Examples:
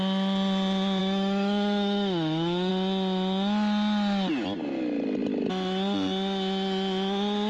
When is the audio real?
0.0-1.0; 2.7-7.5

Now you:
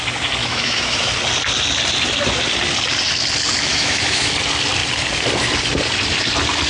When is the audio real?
0.0-0.4; 1.1-3.7; 4.3-6.7

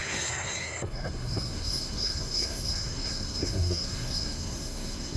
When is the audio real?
none

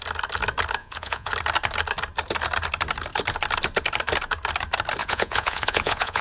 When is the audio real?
0.0-0.8; 1.3-5.0

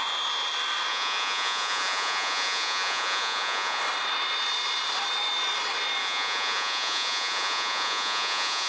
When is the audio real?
0.0-0.9; 3.8-6.0

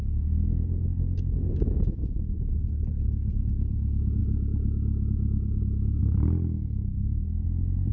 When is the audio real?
0.0-7.9

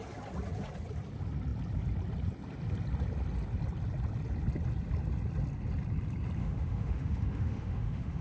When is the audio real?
0.0-6.4